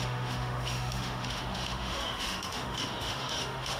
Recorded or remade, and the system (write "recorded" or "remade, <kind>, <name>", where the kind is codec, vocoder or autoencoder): remade, autoencoder, DAC-VAE